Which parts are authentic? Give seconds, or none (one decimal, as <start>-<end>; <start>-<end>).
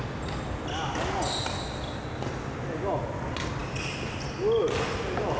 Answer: 0.0-5.4